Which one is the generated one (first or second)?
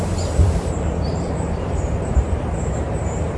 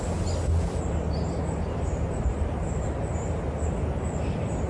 first